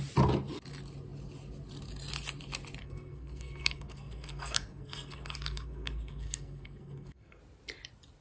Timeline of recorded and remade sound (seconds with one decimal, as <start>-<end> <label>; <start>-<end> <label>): 0.0-2.8 recorded; 2.8-7.4 remade; 7.4-8.2 recorded